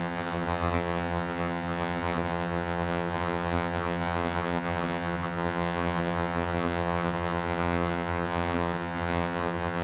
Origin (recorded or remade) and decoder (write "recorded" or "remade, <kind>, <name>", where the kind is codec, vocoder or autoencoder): remade, vocoder, HiFi-GAN